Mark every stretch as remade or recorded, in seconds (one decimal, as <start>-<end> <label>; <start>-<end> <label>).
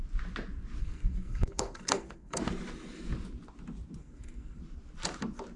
0.0-0.8 recorded; 0.8-2.4 remade; 2.4-4.0 recorded; 4.0-4.6 remade; 4.6-5.6 recorded